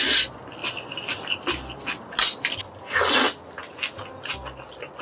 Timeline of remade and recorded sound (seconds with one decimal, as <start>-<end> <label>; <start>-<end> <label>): 0.0-5.0 recorded